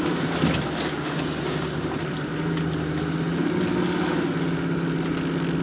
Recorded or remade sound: recorded